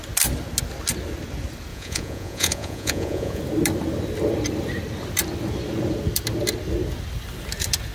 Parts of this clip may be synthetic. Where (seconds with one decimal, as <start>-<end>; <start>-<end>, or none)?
1.7-3.4